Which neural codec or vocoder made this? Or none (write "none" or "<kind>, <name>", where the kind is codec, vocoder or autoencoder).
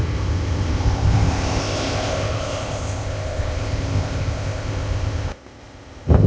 codec, ZipCodec